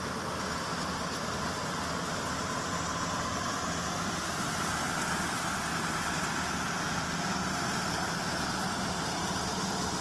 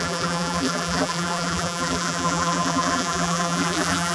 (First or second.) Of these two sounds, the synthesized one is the second